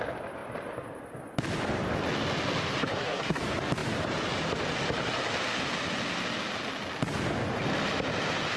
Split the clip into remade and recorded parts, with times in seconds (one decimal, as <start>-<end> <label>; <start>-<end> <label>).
0.0-2.8 recorded; 2.8-3.4 remade; 3.4-8.6 recorded